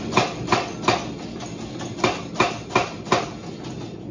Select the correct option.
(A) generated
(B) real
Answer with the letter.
B